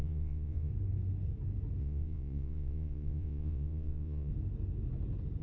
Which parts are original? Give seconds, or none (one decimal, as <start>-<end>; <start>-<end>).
0.7-1.8; 4.3-5.4